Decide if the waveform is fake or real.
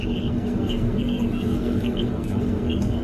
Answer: fake